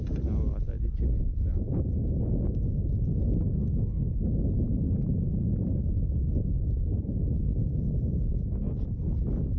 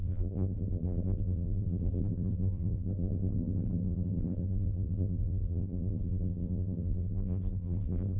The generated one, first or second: second